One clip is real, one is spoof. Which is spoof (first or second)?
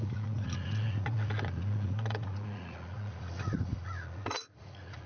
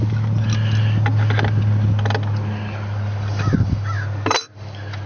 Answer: first